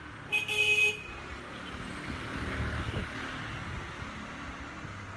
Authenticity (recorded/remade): recorded